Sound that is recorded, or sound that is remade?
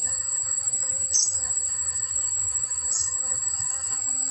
remade